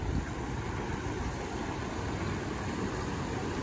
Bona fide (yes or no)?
yes